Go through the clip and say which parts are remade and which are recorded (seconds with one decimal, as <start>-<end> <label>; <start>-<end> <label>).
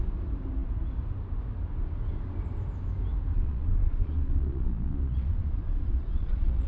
0.0-3.3 recorded; 3.3-6.7 remade